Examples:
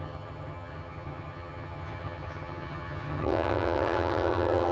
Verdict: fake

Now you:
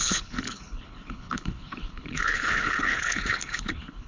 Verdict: fake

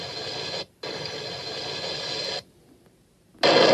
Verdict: real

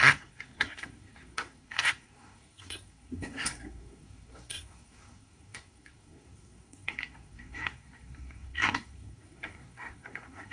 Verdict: fake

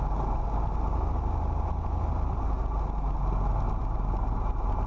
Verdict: real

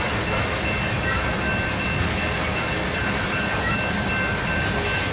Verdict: real